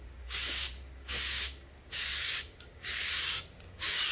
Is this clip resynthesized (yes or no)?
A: yes